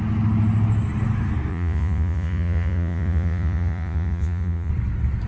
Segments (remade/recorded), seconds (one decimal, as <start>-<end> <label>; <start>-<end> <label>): 0.0-1.5 recorded; 1.5-4.7 remade; 4.7-5.3 recorded